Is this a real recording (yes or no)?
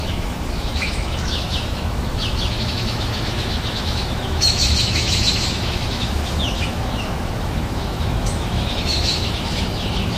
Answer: no